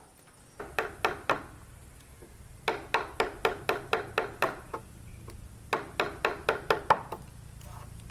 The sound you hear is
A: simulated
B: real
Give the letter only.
B